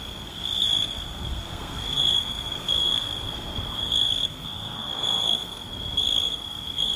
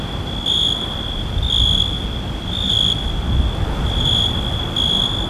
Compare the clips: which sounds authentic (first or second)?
second